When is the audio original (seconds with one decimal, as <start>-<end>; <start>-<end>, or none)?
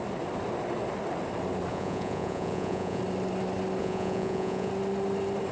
0.0-1.7; 3.0-3.8; 4.7-5.5